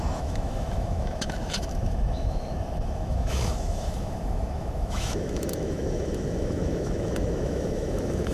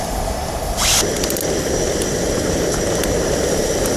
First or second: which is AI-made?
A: first